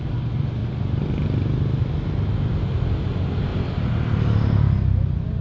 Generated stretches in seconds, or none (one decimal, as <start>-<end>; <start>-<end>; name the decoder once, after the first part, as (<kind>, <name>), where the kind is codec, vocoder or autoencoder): none